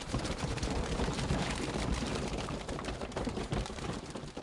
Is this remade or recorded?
remade